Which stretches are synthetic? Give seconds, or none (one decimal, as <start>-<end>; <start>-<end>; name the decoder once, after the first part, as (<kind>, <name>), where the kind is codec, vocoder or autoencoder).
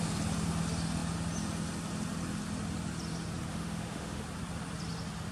3.5-4.2 (autoencoder, DAC-VAE)